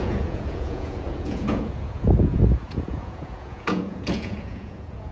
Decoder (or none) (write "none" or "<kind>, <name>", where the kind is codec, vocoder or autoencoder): vocoder, Vocos